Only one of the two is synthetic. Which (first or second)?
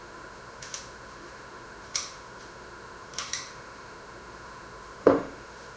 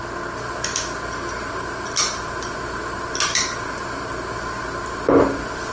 first